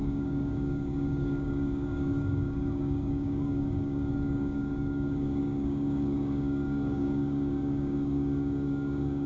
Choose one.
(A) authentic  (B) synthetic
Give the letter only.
B